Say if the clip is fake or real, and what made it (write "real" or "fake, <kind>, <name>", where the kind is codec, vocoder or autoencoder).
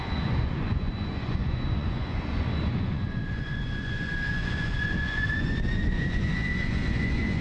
fake, vocoder, Vocos